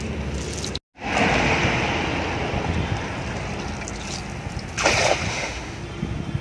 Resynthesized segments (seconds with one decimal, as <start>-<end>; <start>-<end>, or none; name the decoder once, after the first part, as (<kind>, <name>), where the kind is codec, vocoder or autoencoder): 5.3-5.8 (autoencoder, DAC-VAE)